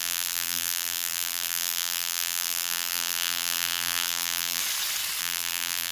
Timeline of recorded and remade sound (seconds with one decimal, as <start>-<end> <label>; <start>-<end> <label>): 0.0-4.6 remade; 4.6-5.2 recorded; 5.2-5.9 remade